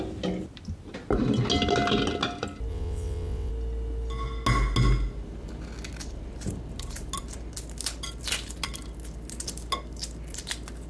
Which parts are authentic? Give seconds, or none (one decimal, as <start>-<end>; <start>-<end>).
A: 0.0-2.7; 3.5-10.9